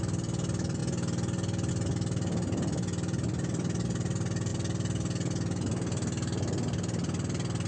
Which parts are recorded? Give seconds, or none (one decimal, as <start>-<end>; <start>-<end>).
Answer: 0.0-7.7